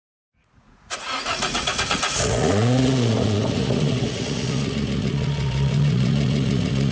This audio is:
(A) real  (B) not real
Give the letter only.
B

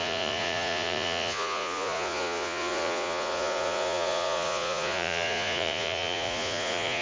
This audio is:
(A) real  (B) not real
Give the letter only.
B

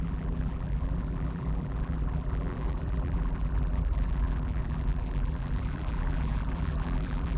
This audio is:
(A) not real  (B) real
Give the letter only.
A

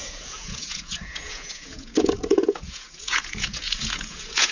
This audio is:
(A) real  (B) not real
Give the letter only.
B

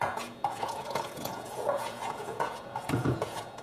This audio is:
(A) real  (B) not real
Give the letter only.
B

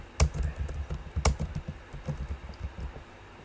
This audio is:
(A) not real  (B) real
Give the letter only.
B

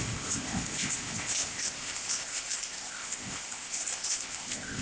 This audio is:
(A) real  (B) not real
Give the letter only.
B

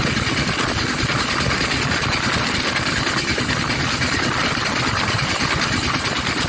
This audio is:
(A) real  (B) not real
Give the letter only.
A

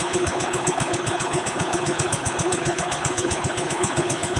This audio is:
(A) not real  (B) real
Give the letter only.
A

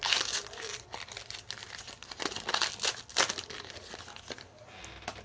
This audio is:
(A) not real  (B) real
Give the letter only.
B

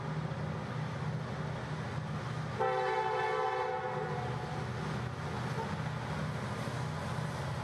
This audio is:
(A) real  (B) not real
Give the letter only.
A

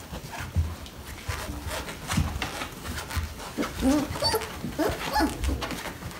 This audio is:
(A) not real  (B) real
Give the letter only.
B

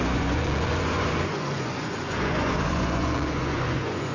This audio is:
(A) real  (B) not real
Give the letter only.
B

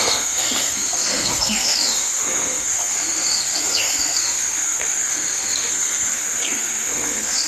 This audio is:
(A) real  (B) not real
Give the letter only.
B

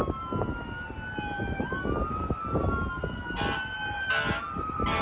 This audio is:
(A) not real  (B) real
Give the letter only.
B